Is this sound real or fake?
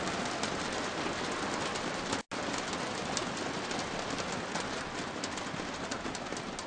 real